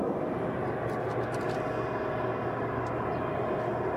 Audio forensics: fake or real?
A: real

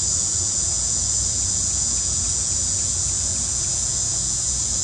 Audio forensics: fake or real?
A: fake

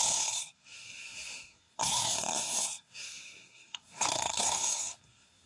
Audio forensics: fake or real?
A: fake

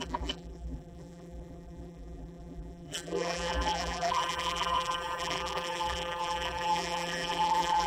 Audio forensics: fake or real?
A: fake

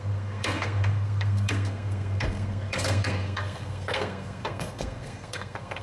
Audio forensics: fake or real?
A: fake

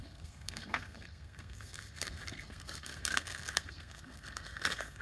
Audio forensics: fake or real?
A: fake